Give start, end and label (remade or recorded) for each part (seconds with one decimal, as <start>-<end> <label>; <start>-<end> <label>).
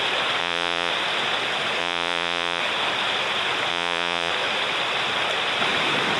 0.0-0.4 recorded; 0.4-0.9 remade; 0.9-1.8 recorded; 1.8-2.6 remade; 2.6-3.7 recorded; 3.7-4.3 remade; 4.3-6.2 recorded